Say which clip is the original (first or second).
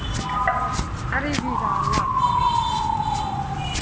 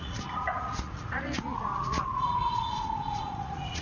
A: first